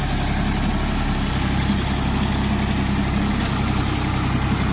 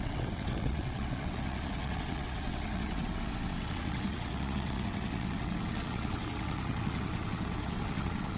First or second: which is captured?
first